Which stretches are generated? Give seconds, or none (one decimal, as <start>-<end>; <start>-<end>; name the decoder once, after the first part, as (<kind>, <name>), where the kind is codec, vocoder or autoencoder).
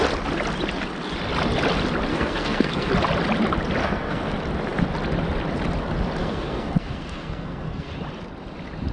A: 2.1-2.9 (codec, SNAC); 3.8-4.3; 6.2-7.9